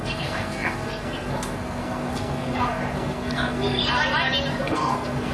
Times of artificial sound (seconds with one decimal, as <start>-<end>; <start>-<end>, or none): 0.0-3.8; 4.6-5.3